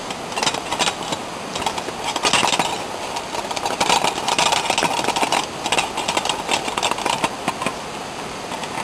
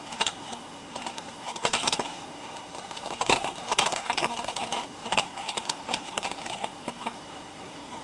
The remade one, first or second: second